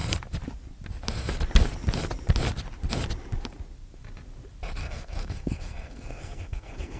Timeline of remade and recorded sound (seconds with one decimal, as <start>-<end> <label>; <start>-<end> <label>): 0.0-4.8 recorded; 4.8-7.0 remade